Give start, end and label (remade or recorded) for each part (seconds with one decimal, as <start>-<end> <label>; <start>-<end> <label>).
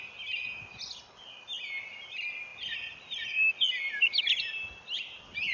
0.0-5.5 recorded